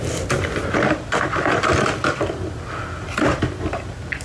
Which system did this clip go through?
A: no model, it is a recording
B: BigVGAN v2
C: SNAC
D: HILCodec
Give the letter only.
A